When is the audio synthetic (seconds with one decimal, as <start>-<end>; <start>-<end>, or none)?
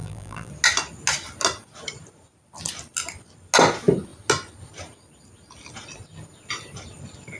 0.0-0.5